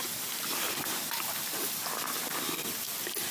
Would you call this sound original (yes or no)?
yes